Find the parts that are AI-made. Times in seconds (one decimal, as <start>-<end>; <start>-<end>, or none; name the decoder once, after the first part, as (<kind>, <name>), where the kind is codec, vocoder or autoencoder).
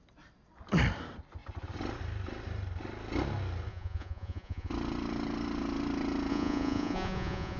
3.7-4.7 (vocoder, Vocos); 6.3-7.6